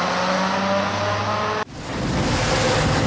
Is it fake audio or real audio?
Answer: real